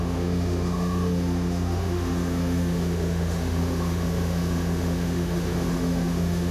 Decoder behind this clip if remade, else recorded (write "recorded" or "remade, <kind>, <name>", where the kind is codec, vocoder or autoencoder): remade, autoencoder, DAC-VAE